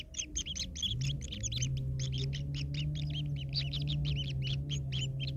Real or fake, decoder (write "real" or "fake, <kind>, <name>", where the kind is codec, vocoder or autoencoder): real